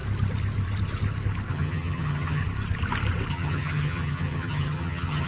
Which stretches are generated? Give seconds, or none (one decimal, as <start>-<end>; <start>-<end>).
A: 1.5-2.4; 3.3-5.3